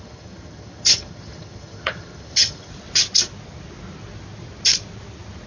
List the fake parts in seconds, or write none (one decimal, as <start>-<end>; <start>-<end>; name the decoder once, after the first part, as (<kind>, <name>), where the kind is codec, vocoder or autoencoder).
0.0-2.7 (vocoder, HiFi-GAN)